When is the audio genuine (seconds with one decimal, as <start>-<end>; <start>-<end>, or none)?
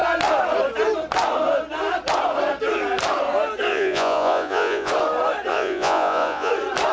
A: 0.0-3.7; 4.9-5.5; 6.5-6.9